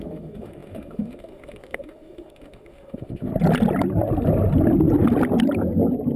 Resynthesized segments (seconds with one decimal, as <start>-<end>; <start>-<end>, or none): 0.0-3.3